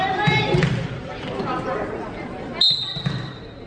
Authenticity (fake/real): real